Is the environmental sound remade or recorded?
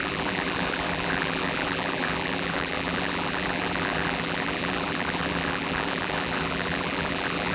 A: remade